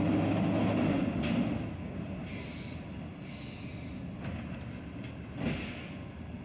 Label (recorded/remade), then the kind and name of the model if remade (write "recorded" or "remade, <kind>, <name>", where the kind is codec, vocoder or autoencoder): recorded